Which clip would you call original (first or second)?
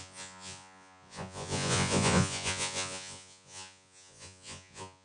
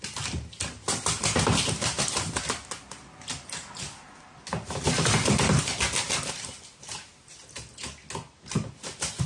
second